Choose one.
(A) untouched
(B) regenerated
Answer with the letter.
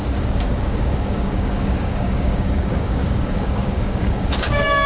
B